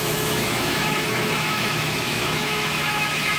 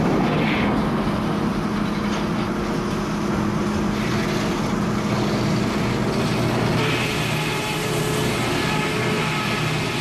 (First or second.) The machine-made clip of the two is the first